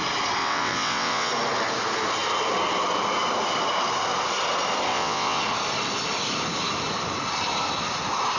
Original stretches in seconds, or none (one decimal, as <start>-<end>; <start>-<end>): 0.0-0.4; 1.3-4.9; 5.4-8.4